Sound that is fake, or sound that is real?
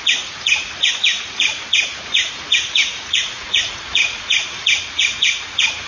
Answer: fake